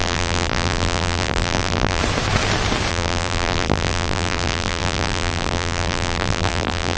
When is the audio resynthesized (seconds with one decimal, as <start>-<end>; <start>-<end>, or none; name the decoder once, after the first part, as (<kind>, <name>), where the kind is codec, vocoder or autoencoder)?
0.0-2.0 (vocoder, BigVGAN v2); 2.9-7.0